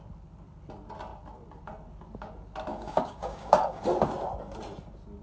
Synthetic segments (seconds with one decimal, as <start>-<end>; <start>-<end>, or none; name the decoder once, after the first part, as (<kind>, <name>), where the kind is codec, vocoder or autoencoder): 2.7-3.8 (codec, DAC)